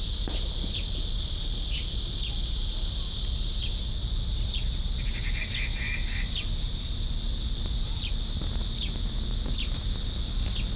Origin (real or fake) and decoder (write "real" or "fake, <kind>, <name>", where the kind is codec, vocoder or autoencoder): real